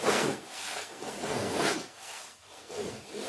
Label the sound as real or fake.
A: fake